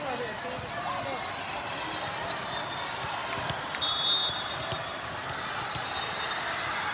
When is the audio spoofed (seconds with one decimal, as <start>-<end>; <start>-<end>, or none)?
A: none